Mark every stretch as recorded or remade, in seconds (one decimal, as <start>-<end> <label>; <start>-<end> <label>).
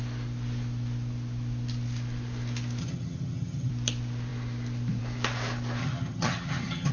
0.0-2.8 recorded; 2.8-3.7 remade; 3.7-5.8 recorded; 5.8-6.9 remade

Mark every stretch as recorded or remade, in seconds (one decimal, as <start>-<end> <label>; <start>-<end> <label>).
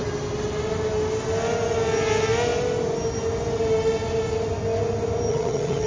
0.0-5.3 recorded; 5.3-5.9 remade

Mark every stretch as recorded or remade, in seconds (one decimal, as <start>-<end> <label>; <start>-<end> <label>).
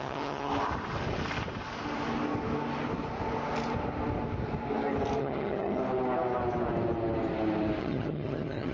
0.0-0.5 remade; 0.5-5.2 recorded; 5.2-5.8 remade; 5.8-7.8 recorded; 7.8-8.7 remade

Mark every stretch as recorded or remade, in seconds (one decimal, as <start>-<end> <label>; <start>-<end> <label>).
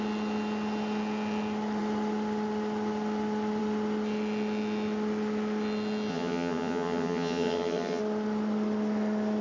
0.0-6.1 recorded; 6.1-8.0 remade; 8.0-9.4 recorded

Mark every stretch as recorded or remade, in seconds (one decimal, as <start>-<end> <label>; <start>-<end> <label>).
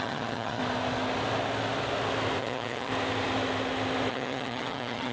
0.0-0.6 remade; 0.6-2.4 recorded; 2.4-2.9 remade; 2.9-4.1 recorded; 4.1-5.1 remade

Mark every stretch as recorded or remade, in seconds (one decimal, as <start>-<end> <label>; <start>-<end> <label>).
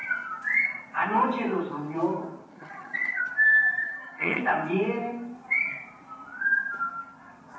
0.0-2.5 recorded; 2.5-3.2 remade; 3.2-3.8 recorded; 3.8-4.4 remade; 4.4-7.6 recorded